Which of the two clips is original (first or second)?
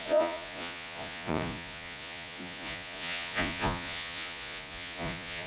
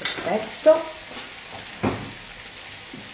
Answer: second